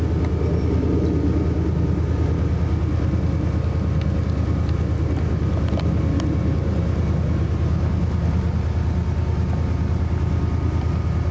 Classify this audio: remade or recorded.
recorded